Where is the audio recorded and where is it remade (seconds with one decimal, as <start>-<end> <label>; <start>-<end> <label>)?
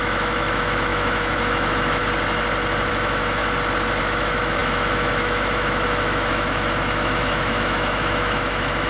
0.0-2.0 remade; 2.0-2.9 recorded; 2.9-3.4 remade; 3.4-4.0 recorded; 4.0-8.9 remade